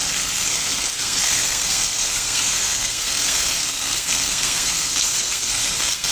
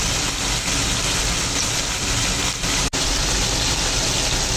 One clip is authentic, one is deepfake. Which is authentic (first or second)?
second